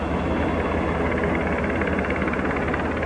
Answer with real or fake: real